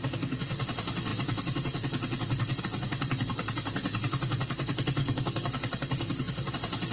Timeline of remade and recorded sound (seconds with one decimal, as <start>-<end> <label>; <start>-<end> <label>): 0.0-5.0 recorded; 5.0-6.5 remade; 6.5-6.9 recorded